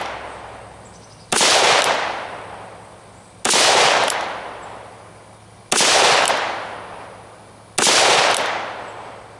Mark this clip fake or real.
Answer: real